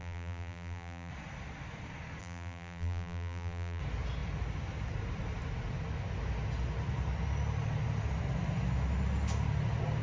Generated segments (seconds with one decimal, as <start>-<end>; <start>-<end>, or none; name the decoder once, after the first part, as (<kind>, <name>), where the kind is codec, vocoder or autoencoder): 0.0-1.1 (vocoder, BigVGAN v2); 2.2-3.8